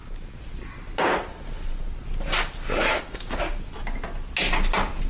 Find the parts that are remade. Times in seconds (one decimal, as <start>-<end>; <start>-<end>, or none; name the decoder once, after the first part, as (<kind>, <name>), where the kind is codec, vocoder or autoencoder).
2.9-3.4 (codec, DAC)